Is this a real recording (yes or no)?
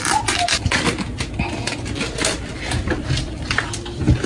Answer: yes